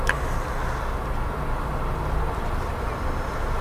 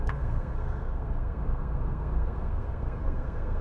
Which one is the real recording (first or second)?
first